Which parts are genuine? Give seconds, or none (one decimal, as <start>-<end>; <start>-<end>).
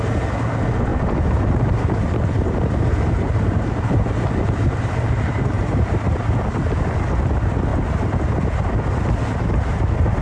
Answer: 0.0-0.9; 6.0-10.2